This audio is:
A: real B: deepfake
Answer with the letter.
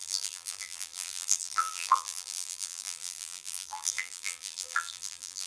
B